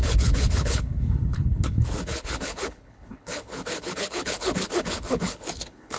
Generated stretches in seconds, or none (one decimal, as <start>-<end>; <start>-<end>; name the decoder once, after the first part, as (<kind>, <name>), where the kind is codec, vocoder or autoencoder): 0.0-6.0 (codec, HILCodec)